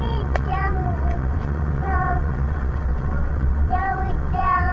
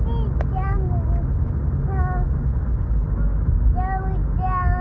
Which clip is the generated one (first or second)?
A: first